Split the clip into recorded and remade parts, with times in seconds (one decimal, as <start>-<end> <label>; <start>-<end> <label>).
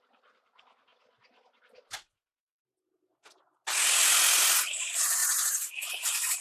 0.0-0.9 remade; 0.9-4.7 recorded; 4.7-5.2 remade; 5.2-5.9 recorded; 5.9-6.4 remade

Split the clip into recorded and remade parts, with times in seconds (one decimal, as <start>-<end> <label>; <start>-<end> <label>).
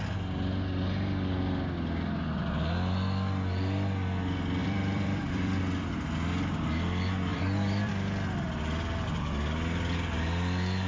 0.0-4.6 recorded; 4.6-5.6 remade; 5.6-7.3 recorded; 7.3-7.9 remade; 7.9-10.9 recorded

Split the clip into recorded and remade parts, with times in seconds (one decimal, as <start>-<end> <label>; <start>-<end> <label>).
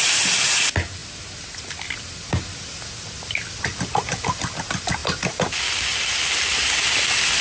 0.0-7.4 recorded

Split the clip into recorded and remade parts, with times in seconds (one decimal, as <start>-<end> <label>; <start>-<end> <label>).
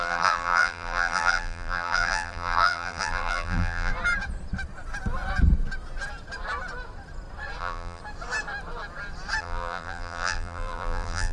0.0-3.9 remade; 3.9-7.6 recorded; 7.6-8.0 remade; 8.0-9.4 recorded; 9.4-11.3 remade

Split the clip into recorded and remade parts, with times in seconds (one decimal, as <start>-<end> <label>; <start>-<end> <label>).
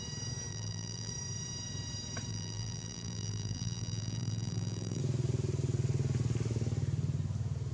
0.0-0.5 recorded; 0.5-1.1 remade; 1.1-2.3 recorded; 2.3-5.0 remade; 5.0-7.7 recorded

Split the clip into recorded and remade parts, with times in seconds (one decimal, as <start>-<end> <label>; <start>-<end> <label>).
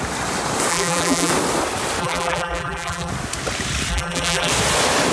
0.0-0.7 recorded; 0.7-1.3 remade; 1.3-2.0 recorded; 2.0-3.1 remade; 3.1-3.9 recorded; 3.9-4.5 remade; 4.5-5.1 recorded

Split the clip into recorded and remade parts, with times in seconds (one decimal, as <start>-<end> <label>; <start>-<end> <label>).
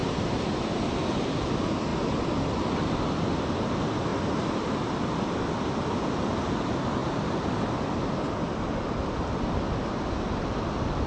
0.0-0.6 remade; 0.6-11.1 recorded